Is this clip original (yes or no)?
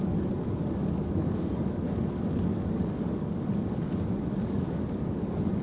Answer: no